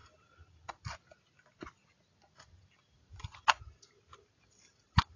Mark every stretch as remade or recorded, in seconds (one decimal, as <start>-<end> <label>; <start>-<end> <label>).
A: 0.0-5.2 recorded